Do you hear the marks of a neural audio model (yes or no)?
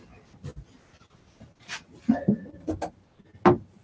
no